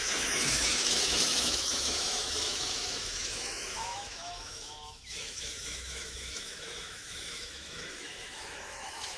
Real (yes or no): no